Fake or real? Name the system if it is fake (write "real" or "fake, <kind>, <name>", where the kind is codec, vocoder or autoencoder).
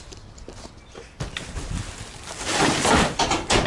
real